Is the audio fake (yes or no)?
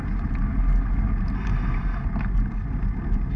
no